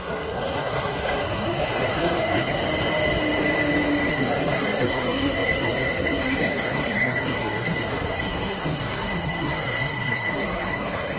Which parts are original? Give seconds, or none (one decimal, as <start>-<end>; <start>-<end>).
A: 2.6-4.1